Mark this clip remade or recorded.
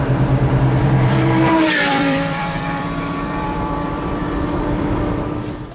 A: remade